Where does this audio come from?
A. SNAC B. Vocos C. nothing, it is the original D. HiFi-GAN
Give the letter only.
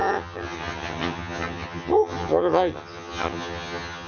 D